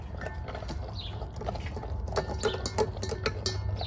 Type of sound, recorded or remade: recorded